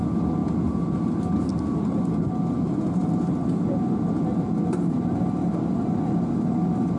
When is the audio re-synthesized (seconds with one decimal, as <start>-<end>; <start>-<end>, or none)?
none